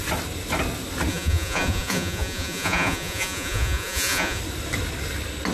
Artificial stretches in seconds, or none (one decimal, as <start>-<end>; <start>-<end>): 1.1-4.4

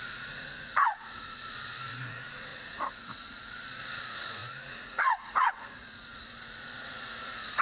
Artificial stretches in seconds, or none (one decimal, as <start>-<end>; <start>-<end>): 0.0-7.6

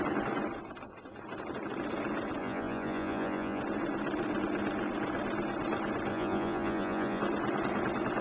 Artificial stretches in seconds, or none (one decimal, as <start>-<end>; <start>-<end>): 2.4-3.6; 6.1-7.2

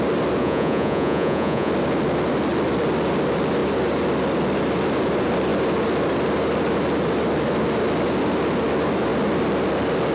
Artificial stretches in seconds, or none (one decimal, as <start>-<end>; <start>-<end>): 0.4-1.7

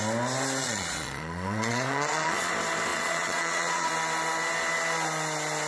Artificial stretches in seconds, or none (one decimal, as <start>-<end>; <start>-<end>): 0.6-2.5; 2.9-3.9